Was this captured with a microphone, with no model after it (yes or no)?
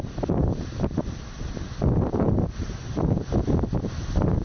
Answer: yes